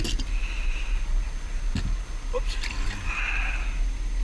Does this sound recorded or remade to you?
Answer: recorded